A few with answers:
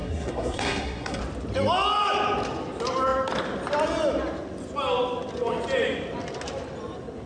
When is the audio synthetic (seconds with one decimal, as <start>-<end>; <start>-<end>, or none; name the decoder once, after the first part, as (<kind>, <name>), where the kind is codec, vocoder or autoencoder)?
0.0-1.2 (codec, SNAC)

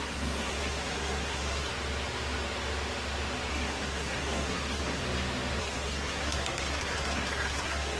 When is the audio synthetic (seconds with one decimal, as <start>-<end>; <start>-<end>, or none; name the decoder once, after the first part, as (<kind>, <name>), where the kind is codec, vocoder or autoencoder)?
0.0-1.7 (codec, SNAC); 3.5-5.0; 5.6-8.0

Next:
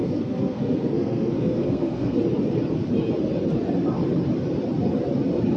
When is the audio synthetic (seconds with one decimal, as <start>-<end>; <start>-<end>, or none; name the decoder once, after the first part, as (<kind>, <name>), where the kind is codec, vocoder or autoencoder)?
0.0-2.2 (codec, SNAC)

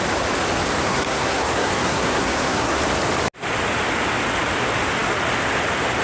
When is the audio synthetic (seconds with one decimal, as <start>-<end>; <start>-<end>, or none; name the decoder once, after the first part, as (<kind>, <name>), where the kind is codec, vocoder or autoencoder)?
0.9-2.8 (codec, SNAC)

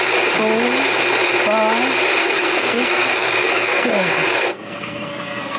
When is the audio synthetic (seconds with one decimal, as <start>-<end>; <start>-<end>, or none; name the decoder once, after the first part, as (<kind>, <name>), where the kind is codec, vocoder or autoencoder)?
2.2-5.6 (codec, SNAC)